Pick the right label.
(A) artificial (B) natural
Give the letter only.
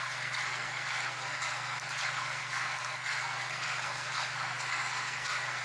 A